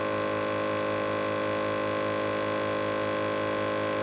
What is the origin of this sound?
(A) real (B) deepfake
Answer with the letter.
A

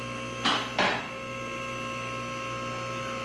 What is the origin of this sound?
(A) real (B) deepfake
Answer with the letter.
A